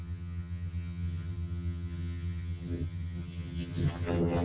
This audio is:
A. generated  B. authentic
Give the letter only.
A